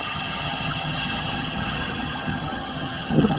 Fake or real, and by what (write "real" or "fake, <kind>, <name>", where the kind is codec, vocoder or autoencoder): fake, vocoder, HiFi-GAN